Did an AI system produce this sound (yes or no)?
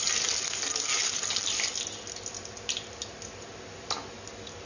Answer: no